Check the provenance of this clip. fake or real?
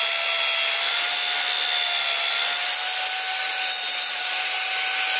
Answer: real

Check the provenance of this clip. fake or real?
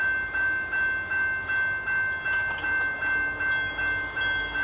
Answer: real